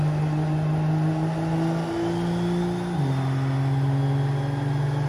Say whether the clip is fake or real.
real